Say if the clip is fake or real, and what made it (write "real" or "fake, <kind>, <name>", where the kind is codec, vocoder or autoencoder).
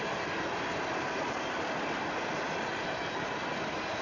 real